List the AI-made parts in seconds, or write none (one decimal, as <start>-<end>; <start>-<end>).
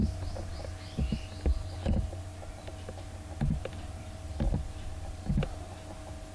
1.5-5.3